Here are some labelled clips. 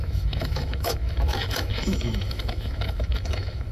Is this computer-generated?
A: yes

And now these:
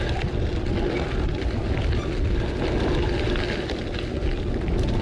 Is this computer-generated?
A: no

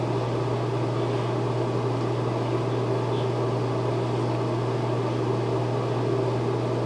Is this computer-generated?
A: no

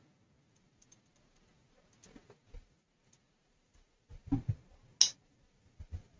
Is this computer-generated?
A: no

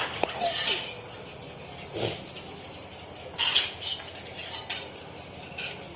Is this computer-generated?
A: no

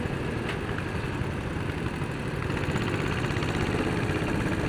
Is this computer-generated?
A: no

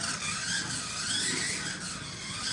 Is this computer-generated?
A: no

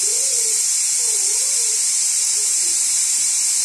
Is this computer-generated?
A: no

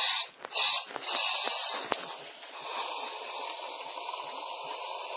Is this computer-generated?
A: no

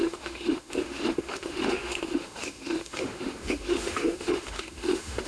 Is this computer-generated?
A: yes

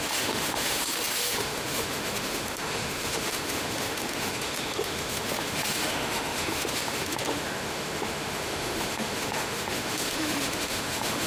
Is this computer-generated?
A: yes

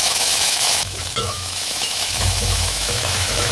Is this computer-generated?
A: yes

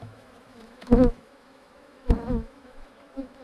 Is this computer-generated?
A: yes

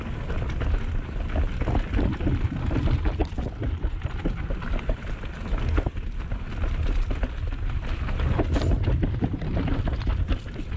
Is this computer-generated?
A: no